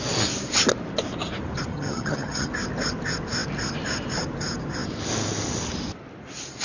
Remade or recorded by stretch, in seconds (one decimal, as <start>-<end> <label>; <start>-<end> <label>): 0.0-1.7 recorded; 1.7-2.5 remade; 2.5-6.6 recorded